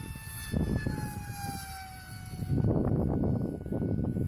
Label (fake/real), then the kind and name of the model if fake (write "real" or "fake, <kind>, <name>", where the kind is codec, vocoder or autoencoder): real